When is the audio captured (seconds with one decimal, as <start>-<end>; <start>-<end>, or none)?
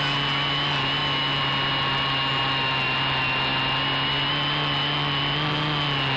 0.0-6.2